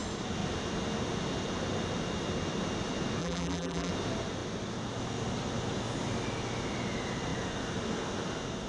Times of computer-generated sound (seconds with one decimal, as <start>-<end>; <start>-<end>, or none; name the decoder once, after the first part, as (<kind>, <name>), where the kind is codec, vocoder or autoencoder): 3.2-3.9 (vocoder, BigVGAN v2)